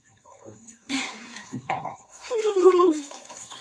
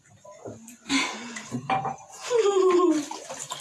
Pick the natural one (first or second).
second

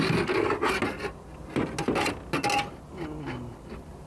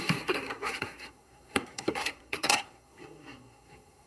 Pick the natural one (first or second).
first